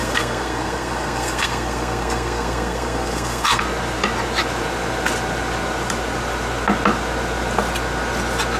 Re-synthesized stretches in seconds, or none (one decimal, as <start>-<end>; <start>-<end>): 0.0-3.6